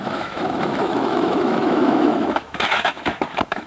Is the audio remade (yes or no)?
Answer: yes